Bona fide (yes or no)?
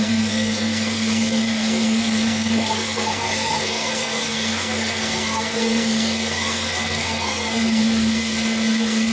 no